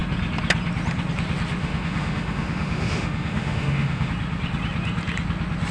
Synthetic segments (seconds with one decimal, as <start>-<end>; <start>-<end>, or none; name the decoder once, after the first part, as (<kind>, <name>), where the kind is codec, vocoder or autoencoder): 1.6-4.1 (autoencoder, DAC-VAE)

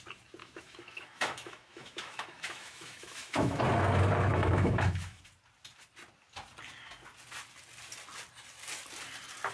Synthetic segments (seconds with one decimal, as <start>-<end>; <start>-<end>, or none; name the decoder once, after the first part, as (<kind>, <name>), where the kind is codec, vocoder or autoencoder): 0.4-3.6 (autoencoder, DAC-VAE); 4.3-5.2

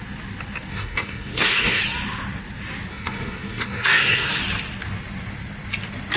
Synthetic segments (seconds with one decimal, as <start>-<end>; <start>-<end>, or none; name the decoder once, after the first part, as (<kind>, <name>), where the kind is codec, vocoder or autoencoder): 0.7-1.8 (codec, SNAC); 2.9-4.4

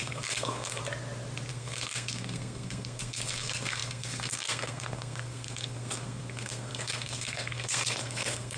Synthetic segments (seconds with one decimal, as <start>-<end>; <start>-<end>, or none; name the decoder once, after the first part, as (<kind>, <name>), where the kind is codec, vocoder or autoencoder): 0.0-0.8 (codec, SNAC); 1.5-8.6

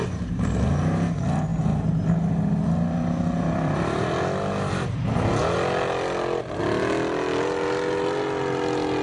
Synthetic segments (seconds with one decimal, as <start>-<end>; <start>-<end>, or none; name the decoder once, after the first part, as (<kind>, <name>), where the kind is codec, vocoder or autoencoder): none

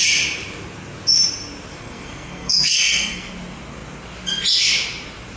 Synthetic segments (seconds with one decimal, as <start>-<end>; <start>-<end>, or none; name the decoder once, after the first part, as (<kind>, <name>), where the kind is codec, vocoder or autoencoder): 1.7-3.3 (codec, SNAC)